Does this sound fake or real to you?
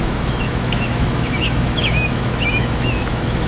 fake